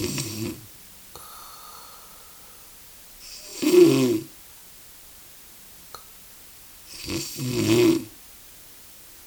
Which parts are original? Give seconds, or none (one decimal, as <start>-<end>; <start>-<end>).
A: 0.0-9.3